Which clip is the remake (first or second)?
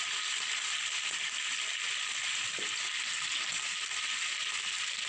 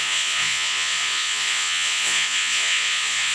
second